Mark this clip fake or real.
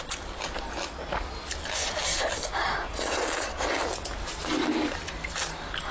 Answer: real